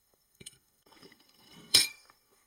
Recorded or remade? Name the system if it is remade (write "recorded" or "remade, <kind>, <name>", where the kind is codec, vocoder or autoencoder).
remade, codec, SNAC